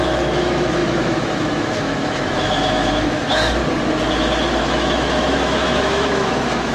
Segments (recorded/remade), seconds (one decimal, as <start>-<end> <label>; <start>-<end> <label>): 0.0-3.6 remade; 3.6-4.6 recorded; 4.6-6.7 remade